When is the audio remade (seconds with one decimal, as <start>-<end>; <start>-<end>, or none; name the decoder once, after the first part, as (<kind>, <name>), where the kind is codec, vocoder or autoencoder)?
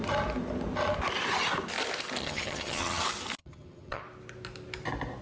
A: 2.2-3.0 (vocoder, HiFi-GAN); 3.4-4.0